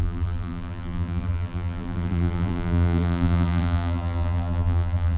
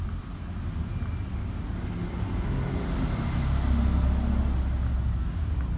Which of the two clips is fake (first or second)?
first